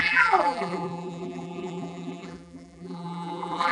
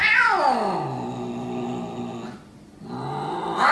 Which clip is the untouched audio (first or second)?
second